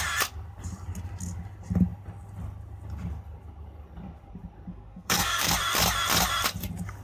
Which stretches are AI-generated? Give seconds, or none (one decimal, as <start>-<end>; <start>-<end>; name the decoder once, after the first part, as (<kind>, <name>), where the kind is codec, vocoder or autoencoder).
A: 4.7-5.5 (codec, SNAC)